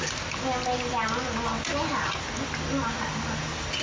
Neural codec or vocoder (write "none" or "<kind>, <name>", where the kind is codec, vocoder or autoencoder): none